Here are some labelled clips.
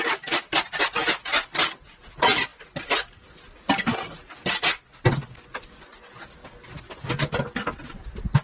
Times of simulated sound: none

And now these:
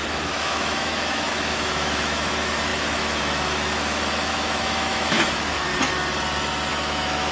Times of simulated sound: 0.0-5.7; 6.7-7.3

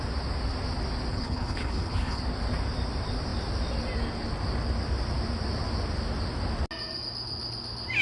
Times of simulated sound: 1.1-2.2

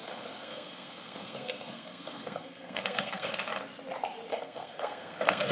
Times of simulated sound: 0.0-3.3; 4.3-5.5

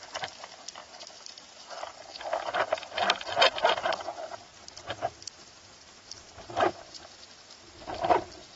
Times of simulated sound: 0.8-1.9

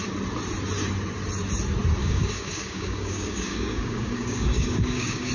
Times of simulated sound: 2.0-5.3

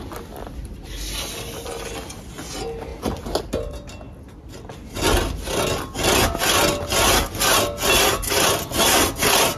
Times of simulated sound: none